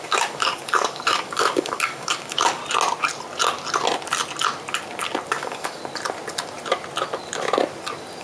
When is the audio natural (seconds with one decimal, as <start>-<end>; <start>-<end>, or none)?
2.6-5.3; 5.8-8.2